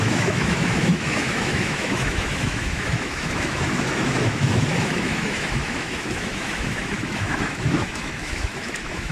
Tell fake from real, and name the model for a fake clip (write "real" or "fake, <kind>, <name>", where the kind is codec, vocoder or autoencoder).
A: fake, autoencoder, DAC-VAE